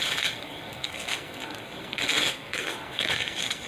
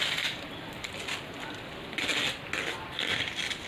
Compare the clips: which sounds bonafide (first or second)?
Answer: second